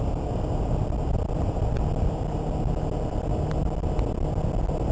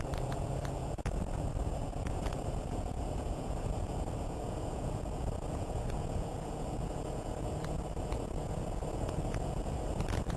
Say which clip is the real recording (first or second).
first